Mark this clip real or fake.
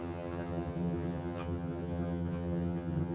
fake